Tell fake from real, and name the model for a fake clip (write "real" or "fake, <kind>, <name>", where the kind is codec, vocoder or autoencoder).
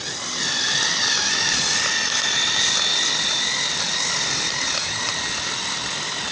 real